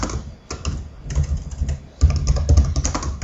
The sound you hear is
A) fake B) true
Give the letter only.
B